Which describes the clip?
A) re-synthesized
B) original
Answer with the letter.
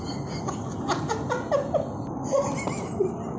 B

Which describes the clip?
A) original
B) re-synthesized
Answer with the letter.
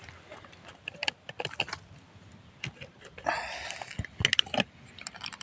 A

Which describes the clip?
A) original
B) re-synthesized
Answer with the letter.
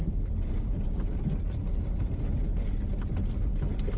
A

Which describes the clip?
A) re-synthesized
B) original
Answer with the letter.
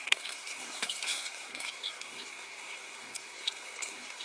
A